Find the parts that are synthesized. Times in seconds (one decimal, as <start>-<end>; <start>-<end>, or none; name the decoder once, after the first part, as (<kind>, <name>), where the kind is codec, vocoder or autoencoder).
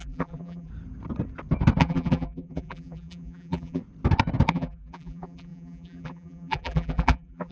0.0-0.7 (vocoder, BigVGAN v2); 1.8-3.8; 4.5-7.5